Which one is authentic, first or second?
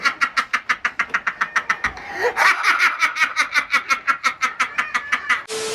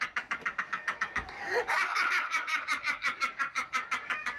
first